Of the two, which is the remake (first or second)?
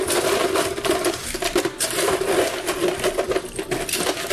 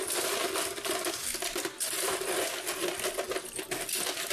first